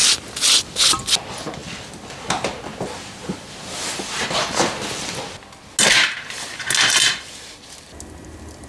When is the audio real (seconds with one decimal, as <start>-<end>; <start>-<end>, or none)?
0.0-8.7